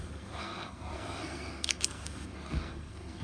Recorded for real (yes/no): no